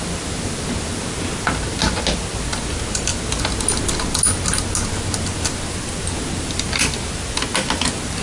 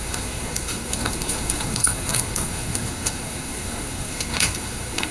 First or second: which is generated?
second